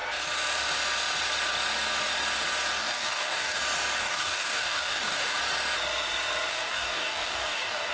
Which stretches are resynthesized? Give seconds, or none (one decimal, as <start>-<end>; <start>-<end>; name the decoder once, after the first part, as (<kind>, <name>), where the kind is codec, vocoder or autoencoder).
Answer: 2.8-3.6 (codec, DAC); 4.0-5.4; 6.5-7.9